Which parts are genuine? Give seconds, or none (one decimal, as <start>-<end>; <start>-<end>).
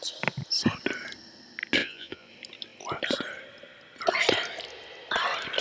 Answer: 0.0-1.8; 2.3-5.6